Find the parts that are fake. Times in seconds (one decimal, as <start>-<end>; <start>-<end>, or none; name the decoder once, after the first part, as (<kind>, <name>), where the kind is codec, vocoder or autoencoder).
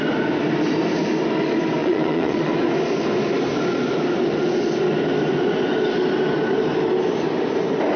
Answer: 1.8-2.5 (vocoder, Vocos)